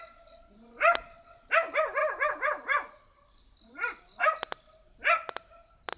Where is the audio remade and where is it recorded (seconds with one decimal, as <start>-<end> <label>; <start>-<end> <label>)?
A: 0.0-6.0 recorded